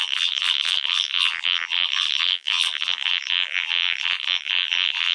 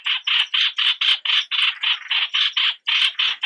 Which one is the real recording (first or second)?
second